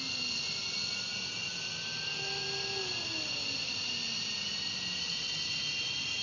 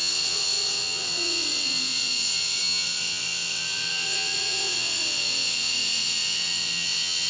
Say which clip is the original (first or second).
first